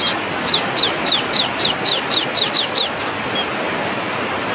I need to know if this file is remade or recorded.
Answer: recorded